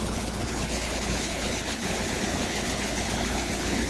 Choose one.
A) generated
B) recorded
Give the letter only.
A